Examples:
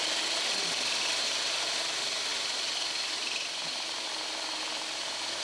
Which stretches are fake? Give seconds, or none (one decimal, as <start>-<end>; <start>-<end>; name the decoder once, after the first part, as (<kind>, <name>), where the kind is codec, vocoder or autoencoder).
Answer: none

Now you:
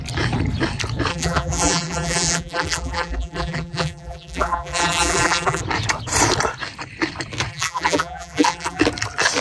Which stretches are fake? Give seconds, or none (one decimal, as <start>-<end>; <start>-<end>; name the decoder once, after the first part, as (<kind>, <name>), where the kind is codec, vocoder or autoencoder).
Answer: 1.1-5.6 (vocoder, BigVGAN v2); 7.5-8.8

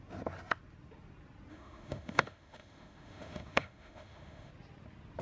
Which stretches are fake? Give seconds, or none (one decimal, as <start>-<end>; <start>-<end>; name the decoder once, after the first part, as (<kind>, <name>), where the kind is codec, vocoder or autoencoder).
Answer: 1.5-4.5 (autoencoder, DAC-VAE)